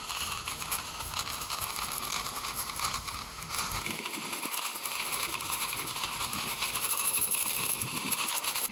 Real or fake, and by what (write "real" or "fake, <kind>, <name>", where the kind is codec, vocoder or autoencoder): fake, autoencoder, DAC-VAE